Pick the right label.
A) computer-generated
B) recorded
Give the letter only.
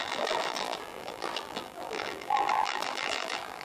A